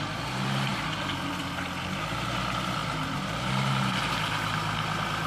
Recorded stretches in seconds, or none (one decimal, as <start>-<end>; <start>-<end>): 0.7-1.4; 2.8-5.3